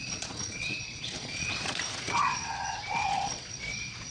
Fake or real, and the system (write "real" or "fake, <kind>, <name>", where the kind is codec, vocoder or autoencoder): fake, vocoder, Vocos